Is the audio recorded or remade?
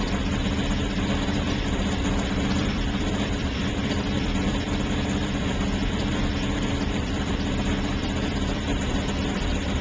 remade